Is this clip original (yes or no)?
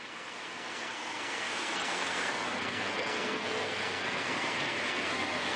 no